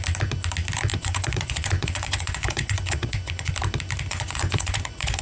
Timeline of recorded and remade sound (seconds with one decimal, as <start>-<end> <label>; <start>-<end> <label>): 0.0-0.9 recorded; 0.9-3.5 remade; 3.5-4.1 recorded; 4.1-5.2 remade

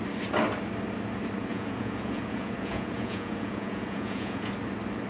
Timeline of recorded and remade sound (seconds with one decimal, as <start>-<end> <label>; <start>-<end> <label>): 0.0-1.5 recorded; 1.5-4.5 remade; 4.5-5.1 recorded